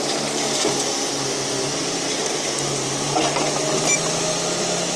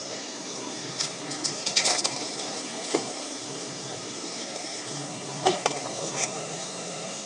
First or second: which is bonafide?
first